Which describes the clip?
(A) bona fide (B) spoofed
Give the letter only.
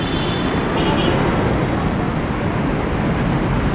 A